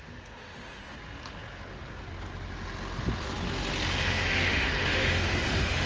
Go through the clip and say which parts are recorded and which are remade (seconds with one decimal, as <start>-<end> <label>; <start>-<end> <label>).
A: 0.0-0.8 remade; 0.8-3.9 recorded; 3.9-5.9 remade